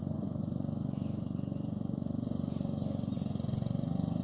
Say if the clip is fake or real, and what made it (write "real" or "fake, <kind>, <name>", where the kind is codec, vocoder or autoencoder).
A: fake, vocoder, Vocos